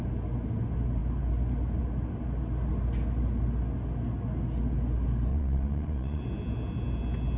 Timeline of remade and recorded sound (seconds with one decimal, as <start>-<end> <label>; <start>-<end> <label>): 0.0-5.3 recorded; 5.3-6.2 remade; 6.2-7.4 recorded